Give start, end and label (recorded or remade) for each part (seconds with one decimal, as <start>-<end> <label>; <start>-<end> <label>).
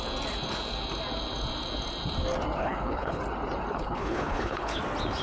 0.0-2.6 recorded; 2.6-3.2 remade; 3.2-3.7 recorded; 3.7-4.8 remade; 4.8-5.2 recorded